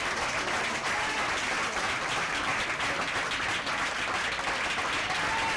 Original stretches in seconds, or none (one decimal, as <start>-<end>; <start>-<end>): 0.0-5.6